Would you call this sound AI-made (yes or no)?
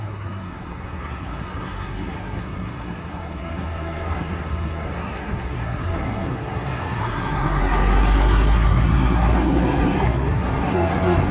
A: yes